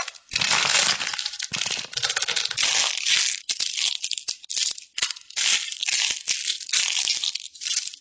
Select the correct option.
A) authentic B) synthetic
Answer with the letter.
A